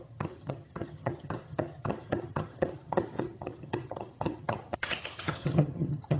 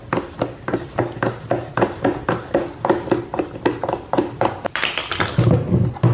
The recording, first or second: second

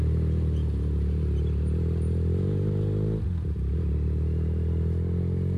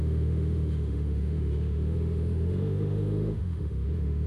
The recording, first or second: first